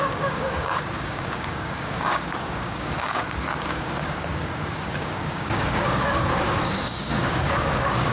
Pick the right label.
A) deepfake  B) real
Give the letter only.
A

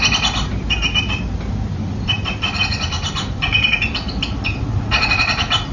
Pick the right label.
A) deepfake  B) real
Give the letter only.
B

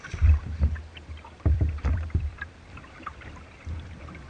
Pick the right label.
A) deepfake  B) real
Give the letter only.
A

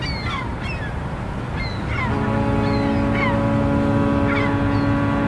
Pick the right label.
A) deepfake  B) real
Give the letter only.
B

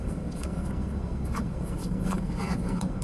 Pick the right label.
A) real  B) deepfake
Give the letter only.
B